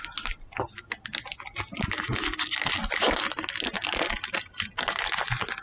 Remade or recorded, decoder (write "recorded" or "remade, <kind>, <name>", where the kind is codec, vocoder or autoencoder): recorded